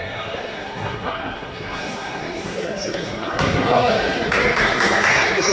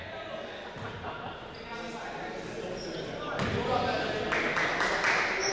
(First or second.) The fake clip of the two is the first